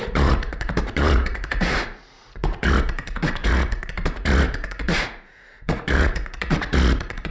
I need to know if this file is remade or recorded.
remade